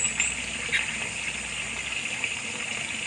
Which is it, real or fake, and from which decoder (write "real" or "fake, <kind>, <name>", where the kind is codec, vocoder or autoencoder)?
real